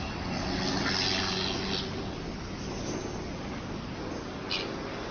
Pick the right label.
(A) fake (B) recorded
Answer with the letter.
B